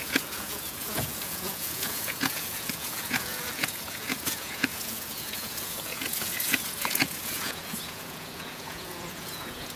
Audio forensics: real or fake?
fake